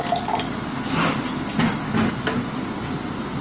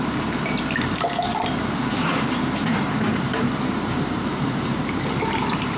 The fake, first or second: second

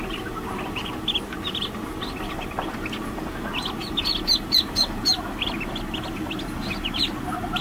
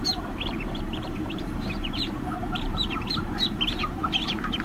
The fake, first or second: second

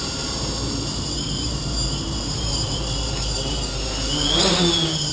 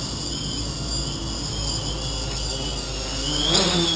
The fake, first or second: first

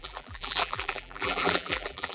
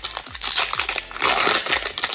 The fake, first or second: first